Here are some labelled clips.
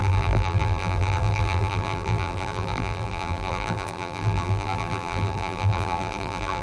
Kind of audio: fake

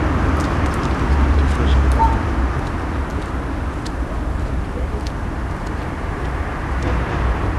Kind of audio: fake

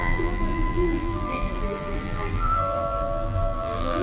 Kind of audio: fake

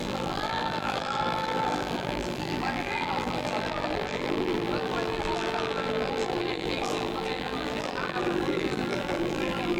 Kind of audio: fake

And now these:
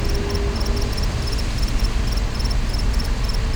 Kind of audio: real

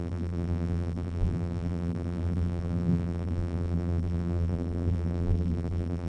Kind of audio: fake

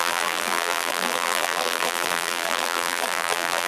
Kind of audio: fake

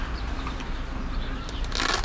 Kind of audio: real